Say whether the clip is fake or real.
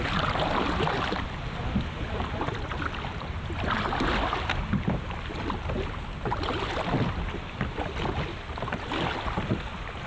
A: real